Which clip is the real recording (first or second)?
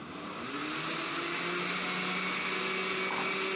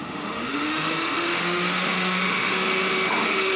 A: first